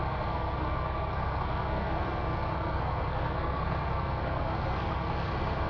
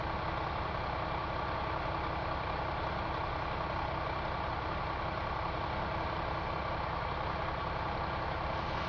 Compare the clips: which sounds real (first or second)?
second